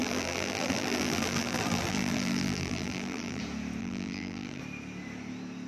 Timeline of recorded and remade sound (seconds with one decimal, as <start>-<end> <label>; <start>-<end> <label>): 0.0-3.4 remade; 3.4-3.8 recorded; 3.8-4.6 remade; 4.6-5.7 recorded